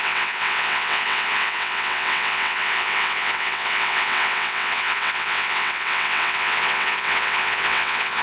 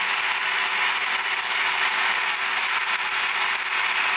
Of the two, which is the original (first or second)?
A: second